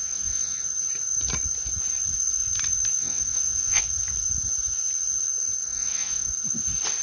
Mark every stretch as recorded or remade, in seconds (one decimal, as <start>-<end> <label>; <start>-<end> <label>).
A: 0.0-0.6 remade; 0.6-3.0 recorded; 3.0-3.8 remade; 3.8-5.6 recorded; 5.6-6.3 remade; 6.3-7.0 recorded